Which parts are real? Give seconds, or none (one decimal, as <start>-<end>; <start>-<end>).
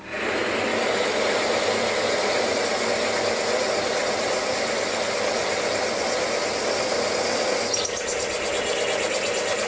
0.0-9.7